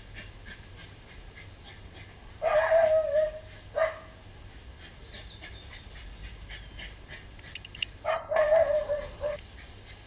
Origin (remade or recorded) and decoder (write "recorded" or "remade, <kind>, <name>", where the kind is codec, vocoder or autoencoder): recorded